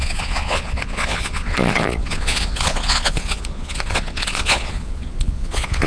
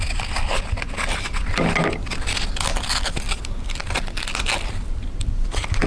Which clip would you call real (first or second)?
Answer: second